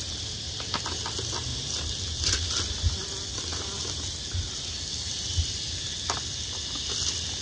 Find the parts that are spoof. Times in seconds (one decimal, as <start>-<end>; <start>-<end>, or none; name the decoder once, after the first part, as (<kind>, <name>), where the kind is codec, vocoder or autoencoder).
none